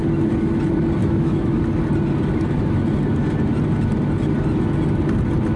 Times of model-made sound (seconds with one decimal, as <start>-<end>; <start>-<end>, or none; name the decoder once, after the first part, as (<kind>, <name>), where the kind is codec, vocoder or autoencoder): 1.0-1.6 (autoencoder, DAC-VAE)